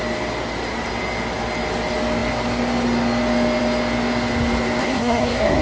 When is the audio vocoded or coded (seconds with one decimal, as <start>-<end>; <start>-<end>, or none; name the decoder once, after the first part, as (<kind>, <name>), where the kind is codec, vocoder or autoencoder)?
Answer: 4.8-5.6 (codec, SNAC)